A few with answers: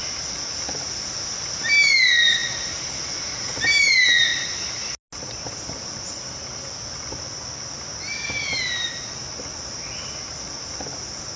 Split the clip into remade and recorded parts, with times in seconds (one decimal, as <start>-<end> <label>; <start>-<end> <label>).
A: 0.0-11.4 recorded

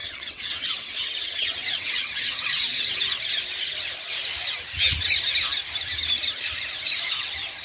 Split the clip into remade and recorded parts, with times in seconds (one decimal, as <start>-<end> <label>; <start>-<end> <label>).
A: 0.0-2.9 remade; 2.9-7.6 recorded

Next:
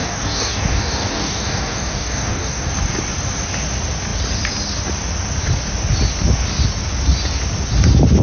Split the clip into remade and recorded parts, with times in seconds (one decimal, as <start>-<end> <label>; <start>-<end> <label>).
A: 0.0-2.7 remade; 2.7-8.2 recorded

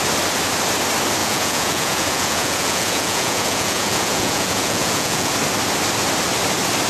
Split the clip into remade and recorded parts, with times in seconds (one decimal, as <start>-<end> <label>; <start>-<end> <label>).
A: 0.0-1.2 recorded; 1.2-5.3 remade; 5.3-6.9 recorded

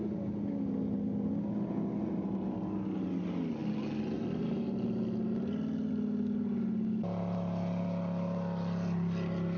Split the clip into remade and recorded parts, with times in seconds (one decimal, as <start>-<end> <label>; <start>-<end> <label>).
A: 0.0-9.6 recorded